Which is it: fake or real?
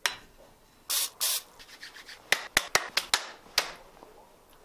real